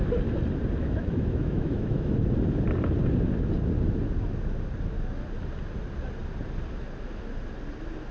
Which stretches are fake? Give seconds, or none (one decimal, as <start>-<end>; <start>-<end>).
0.8-2.1